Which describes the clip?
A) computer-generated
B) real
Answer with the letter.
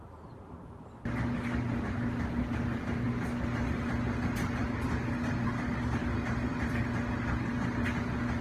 B